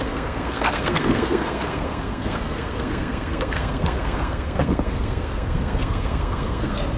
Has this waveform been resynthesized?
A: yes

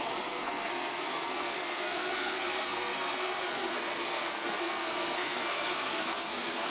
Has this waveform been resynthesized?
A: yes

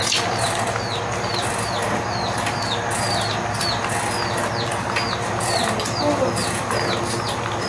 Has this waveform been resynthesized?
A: no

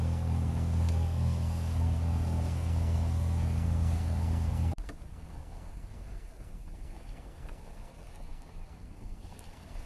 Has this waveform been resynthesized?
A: yes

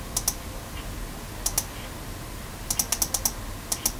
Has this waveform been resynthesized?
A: no